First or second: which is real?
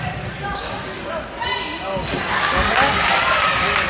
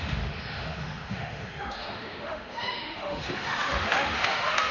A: first